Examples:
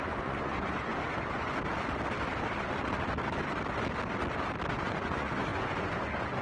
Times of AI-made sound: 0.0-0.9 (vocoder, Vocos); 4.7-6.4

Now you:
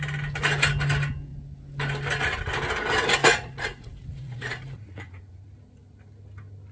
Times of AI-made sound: 3.2-5.4 (vocoder, Vocos)

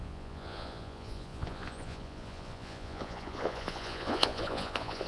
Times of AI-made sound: 0.0-5.1 (vocoder, Vocos)